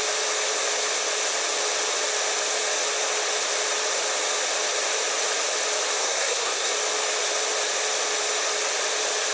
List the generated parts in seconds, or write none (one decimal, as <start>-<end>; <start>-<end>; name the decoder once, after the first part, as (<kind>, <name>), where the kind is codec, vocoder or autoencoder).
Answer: 6.0-6.7 (codec, SNAC)